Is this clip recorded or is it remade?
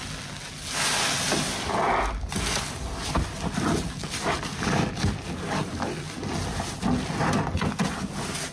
recorded